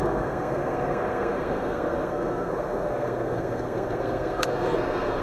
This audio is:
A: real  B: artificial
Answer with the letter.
B